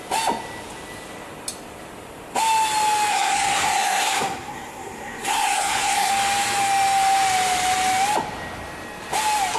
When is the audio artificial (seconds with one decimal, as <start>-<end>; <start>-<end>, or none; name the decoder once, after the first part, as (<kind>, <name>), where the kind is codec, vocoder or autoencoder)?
3.1-6.1 (codec, SNAC)